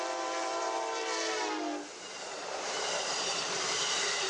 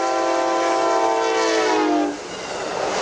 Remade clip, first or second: first